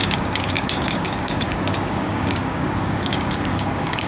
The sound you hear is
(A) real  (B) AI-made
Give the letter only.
B